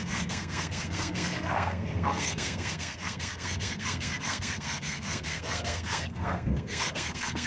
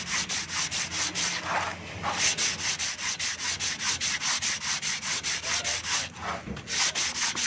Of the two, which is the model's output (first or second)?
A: first